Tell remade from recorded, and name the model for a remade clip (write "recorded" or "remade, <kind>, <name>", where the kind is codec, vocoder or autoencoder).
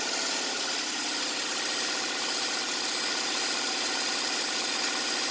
recorded